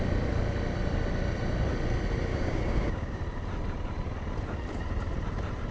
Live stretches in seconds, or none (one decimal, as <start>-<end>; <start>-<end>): 0.0-2.3; 3.2-5.7